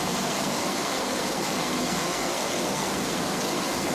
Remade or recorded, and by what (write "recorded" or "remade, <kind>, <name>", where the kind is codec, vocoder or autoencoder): remade, codec, SNAC